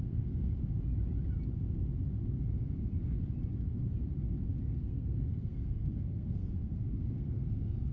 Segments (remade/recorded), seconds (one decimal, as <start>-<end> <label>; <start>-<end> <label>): 0.0-0.6 remade; 0.6-4.6 recorded; 4.6-7.9 remade